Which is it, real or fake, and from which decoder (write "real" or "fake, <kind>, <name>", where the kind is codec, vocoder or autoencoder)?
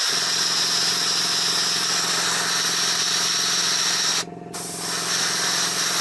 real